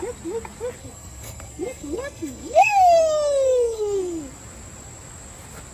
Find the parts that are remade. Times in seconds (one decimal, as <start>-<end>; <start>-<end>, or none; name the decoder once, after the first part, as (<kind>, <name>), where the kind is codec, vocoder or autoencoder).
0.8-4.2 (codec, SNAC)